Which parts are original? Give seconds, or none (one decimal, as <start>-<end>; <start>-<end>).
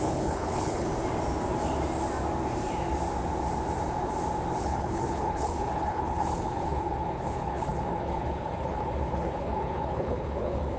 0.9-4.6